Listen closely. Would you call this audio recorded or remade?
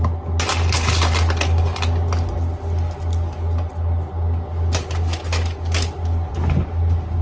recorded